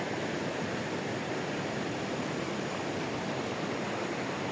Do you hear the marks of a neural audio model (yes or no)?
no